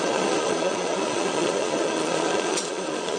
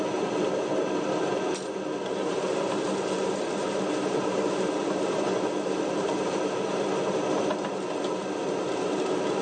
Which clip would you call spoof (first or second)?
first